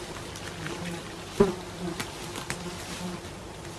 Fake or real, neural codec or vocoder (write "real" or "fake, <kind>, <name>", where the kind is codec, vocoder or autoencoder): real